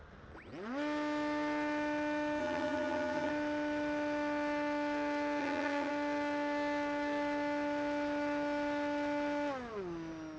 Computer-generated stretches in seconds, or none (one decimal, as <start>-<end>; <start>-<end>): 2.4-3.3; 5.4-5.9